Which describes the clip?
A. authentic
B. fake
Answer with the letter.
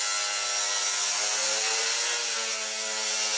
A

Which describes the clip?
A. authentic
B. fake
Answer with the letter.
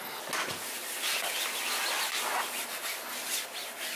A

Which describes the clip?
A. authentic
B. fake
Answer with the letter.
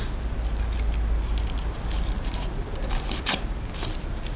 A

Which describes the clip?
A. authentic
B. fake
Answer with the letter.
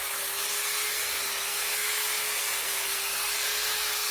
B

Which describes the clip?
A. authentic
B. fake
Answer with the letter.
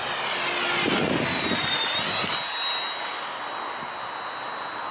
A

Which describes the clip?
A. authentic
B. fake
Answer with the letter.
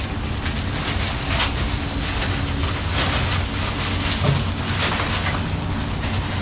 A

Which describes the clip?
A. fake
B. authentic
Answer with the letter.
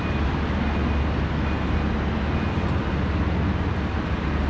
B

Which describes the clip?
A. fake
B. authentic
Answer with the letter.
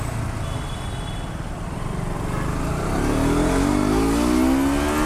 B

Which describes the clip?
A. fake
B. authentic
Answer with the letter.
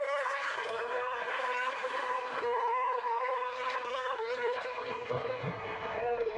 A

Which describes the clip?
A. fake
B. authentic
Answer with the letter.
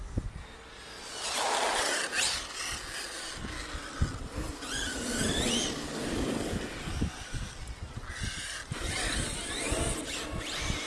B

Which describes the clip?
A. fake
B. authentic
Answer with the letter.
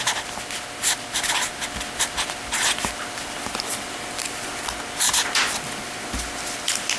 B